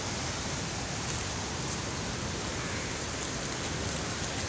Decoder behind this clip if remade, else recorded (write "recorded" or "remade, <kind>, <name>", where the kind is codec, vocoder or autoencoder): recorded